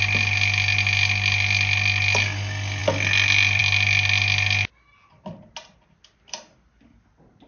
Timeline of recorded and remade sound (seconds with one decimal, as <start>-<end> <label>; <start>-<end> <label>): 0.0-7.5 recorded